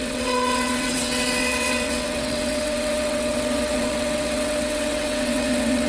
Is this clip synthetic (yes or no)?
yes